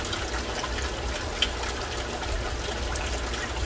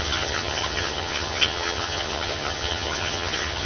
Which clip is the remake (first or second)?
second